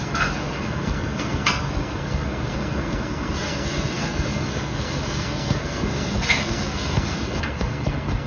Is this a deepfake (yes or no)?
yes